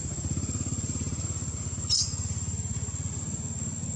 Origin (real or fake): real